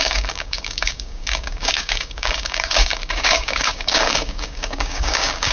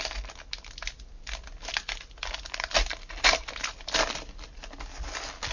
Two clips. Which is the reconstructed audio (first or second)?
first